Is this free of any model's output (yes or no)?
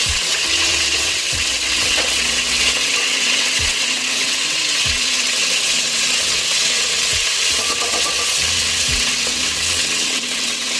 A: no